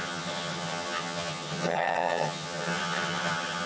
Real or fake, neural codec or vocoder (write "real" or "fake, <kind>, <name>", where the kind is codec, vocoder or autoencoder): fake, vocoder, HiFi-GAN